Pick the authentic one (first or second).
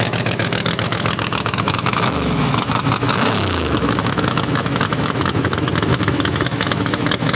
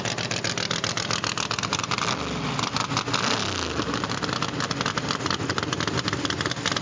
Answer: second